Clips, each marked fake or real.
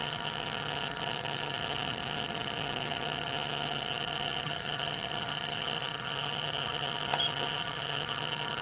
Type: fake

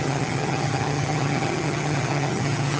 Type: fake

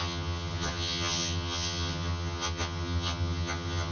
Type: fake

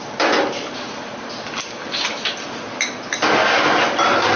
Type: real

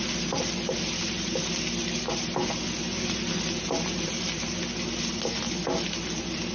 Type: real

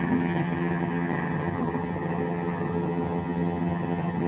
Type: fake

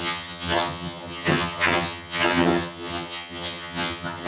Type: fake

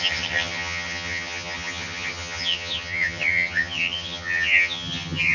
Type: fake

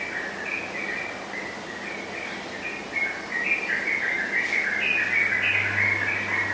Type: real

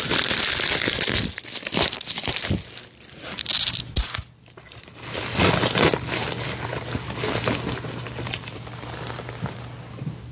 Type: real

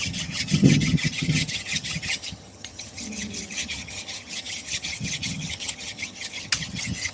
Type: fake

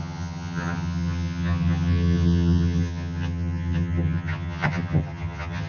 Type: fake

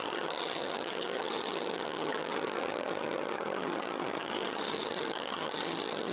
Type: fake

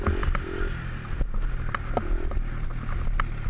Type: real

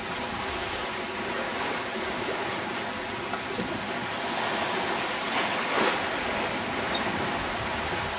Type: real